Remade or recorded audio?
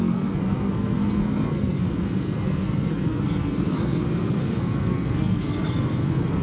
remade